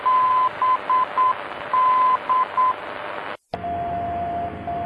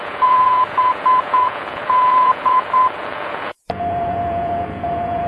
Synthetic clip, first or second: second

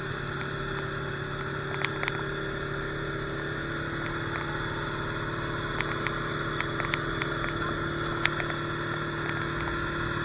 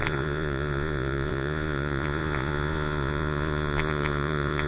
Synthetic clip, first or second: second